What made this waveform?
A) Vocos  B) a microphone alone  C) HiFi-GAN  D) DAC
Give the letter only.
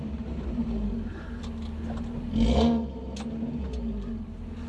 B